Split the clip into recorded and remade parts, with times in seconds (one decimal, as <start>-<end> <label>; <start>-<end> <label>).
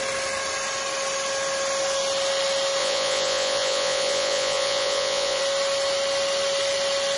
0.0-2.8 recorded; 2.8-5.4 remade; 5.4-7.2 recorded